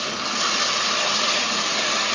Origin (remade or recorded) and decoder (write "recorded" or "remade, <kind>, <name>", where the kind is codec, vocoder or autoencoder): recorded